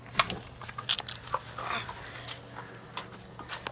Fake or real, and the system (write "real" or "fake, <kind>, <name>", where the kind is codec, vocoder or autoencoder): real